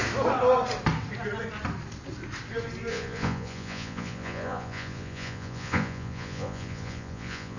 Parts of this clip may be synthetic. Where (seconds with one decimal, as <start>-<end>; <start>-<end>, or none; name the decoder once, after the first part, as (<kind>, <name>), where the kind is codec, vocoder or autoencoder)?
2.9-7.6 (vocoder, Vocos)